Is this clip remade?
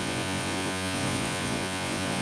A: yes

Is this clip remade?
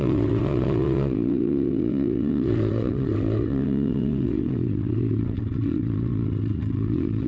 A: yes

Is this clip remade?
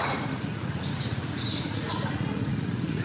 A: yes